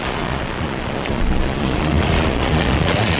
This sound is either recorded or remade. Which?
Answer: remade